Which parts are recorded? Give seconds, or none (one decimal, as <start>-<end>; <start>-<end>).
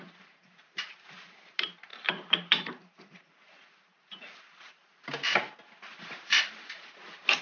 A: 0.0-1.9; 3.2-5.9; 6.9-7.4